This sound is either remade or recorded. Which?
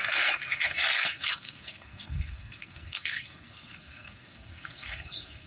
remade